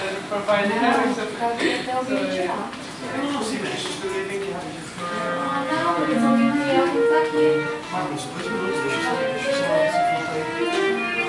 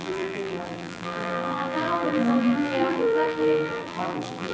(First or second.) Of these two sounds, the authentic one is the first